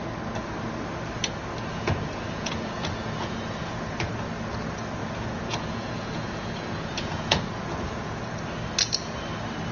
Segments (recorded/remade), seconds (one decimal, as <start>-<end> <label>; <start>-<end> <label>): 0.0-1.7 recorded; 1.7-4.1 remade; 4.1-5.0 recorded; 5.0-8.2 remade; 8.2-9.7 recorded